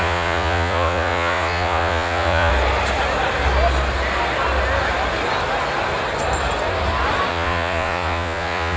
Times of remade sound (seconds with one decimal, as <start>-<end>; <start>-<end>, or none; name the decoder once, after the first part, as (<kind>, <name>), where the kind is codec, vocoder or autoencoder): 0.0-2.5 (vocoder, Vocos); 7.3-8.8